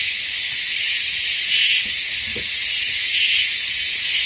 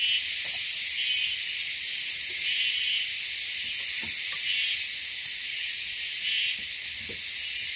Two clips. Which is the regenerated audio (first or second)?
first